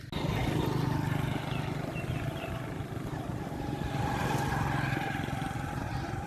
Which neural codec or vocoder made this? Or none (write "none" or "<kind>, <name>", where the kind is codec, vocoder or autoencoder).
none